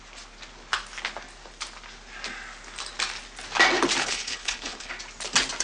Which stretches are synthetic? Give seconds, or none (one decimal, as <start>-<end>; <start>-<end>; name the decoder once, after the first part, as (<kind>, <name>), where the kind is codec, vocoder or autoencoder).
4.0-4.9 (codec, HILCodec)